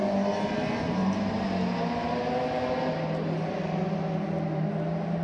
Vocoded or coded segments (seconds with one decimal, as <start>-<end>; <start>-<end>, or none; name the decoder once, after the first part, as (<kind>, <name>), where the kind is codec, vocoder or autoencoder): none

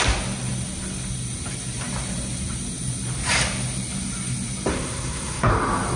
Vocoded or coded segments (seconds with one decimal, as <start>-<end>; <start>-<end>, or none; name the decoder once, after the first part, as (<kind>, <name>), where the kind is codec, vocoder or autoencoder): 4.7-5.5 (codec, SNAC)

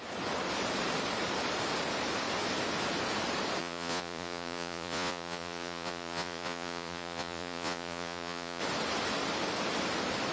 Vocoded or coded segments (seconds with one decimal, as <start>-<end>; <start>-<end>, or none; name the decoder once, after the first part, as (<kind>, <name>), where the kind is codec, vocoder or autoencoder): 3.6-8.6 (vocoder, Vocos)

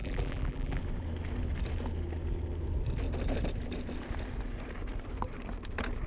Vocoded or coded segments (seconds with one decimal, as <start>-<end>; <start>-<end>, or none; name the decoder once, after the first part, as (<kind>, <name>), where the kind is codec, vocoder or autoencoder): 0.0-0.8 (vocoder, BigVGAN v2)